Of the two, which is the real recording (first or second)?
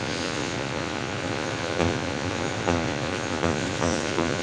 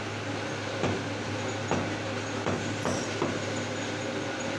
second